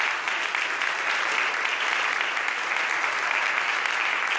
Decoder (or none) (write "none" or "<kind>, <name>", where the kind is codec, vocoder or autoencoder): none